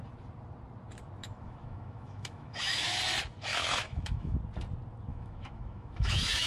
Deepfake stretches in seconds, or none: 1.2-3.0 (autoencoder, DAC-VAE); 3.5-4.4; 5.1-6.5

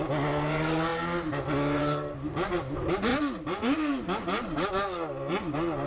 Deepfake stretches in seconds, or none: none